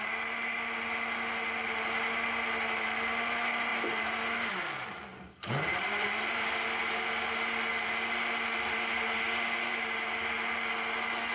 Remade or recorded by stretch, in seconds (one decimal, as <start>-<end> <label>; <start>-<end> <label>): 0.0-5.1 recorded; 5.1-6.5 remade; 6.5-11.3 recorded